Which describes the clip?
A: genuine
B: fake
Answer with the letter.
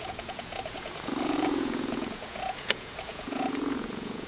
B